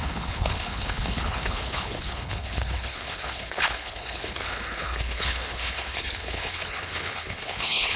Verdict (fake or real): fake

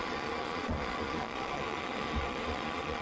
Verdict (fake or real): fake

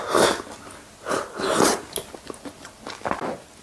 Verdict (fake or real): real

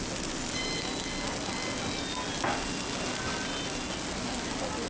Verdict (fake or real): real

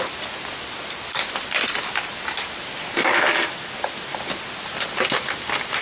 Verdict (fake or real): real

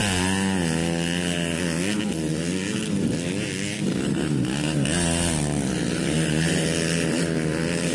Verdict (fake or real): real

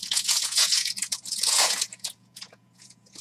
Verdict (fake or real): fake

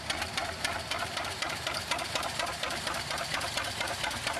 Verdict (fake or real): fake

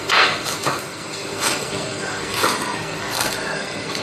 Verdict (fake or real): fake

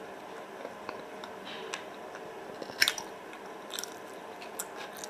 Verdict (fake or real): real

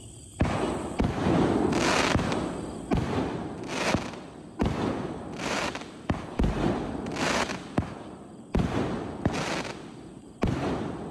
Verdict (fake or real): real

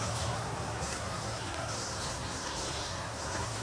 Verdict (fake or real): fake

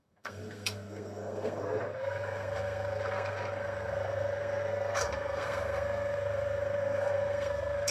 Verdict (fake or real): fake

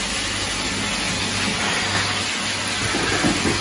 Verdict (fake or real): real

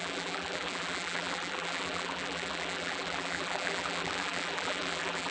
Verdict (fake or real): fake